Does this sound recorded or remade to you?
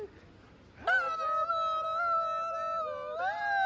recorded